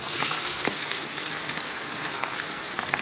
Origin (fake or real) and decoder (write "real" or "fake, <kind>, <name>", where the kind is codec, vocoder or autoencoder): fake, codec, SNAC